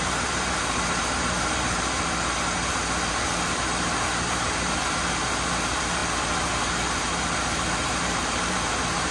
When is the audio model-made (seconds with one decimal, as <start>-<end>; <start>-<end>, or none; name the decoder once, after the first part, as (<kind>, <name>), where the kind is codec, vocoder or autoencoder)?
0.0-6.0 (vocoder, BigVGAN v2); 6.5-9.1